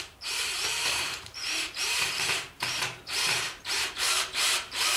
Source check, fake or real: fake